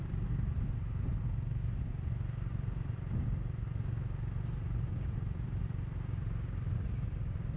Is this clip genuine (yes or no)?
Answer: yes